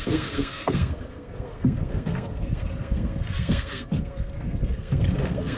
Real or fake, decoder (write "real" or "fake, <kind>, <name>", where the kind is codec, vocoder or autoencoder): fake, codec, SNAC